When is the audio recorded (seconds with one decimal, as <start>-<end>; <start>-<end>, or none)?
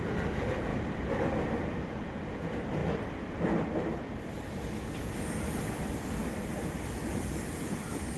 0.0-8.2